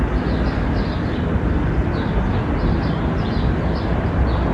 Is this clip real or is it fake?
real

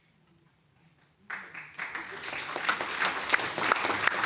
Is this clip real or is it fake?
real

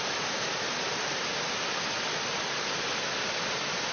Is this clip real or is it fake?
real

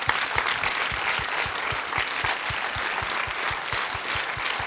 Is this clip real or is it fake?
real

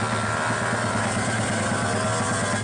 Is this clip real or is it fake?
real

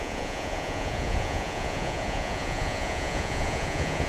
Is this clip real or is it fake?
fake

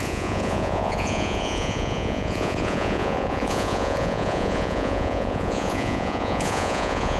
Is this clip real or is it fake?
fake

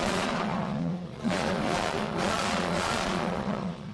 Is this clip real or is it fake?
fake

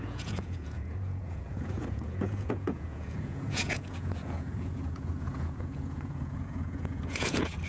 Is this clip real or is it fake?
fake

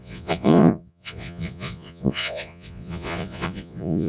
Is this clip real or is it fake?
fake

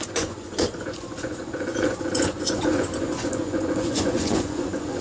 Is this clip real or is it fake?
fake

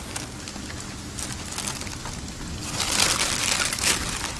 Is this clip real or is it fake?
real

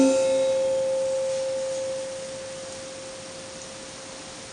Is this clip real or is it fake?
real